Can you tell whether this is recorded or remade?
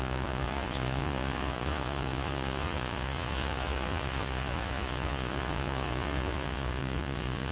remade